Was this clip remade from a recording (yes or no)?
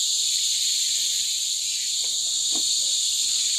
no